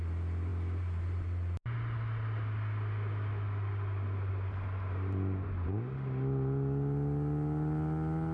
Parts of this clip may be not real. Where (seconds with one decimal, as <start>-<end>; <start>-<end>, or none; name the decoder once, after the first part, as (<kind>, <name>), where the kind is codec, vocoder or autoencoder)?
none